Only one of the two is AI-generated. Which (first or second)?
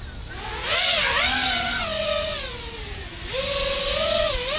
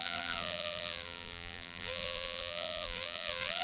second